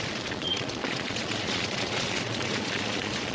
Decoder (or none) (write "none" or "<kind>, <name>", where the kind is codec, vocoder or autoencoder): vocoder, Vocos